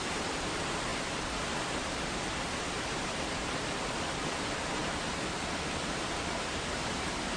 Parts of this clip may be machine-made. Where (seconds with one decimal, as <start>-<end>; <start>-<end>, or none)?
0.0-0.9; 3.0-4.8; 6.9-7.4

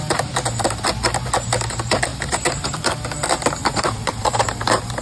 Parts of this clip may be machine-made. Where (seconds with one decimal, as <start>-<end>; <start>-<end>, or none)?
2.1-2.8; 3.6-4.2